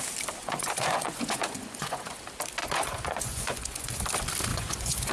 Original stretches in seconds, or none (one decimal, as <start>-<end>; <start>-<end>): 0.0-0.4; 2.2-2.6; 3.9-4.5